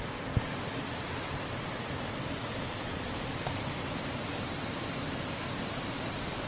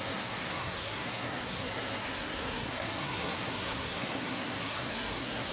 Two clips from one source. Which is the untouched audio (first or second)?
first